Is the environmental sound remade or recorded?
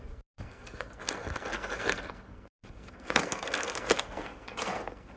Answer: remade